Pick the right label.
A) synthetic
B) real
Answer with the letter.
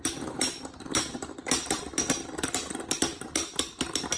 B